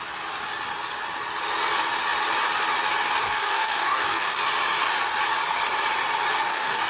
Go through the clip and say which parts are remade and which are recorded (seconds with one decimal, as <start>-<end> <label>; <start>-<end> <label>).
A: 0.0-3.2 recorded; 3.2-4.4 remade; 4.4-6.3 recorded; 6.3-6.9 remade